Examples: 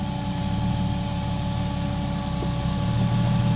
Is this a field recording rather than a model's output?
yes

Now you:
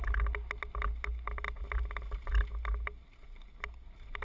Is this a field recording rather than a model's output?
yes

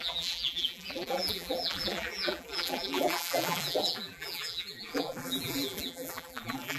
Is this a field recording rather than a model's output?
no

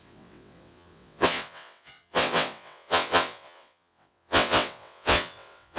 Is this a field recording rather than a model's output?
no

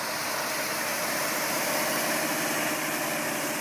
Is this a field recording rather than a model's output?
yes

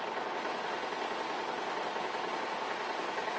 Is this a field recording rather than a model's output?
yes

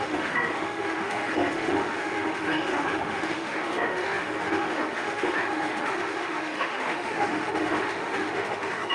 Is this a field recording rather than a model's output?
no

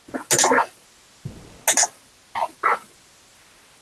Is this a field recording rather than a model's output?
yes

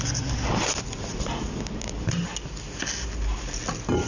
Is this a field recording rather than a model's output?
yes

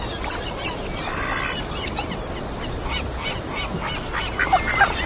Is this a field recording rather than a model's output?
yes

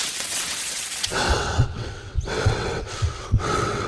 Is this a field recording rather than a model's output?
no